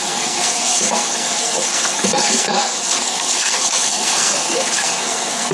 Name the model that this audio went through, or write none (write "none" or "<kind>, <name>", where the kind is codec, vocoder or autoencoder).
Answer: codec, SNAC